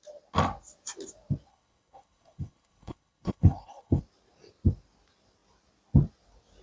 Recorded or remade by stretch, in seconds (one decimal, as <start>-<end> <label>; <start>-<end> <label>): 0.0-1.5 recorded; 1.5-4.0 remade; 4.0-6.6 recorded